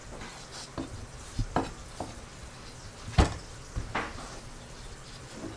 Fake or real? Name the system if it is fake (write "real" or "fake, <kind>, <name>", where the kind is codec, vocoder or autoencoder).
real